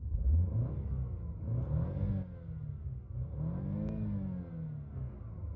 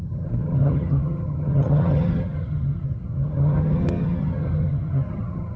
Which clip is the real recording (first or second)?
first